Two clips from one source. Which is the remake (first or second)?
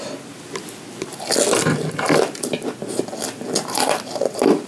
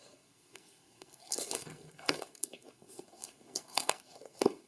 second